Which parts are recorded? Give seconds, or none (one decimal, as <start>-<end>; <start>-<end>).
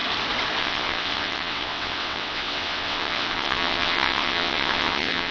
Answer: 0.0-0.6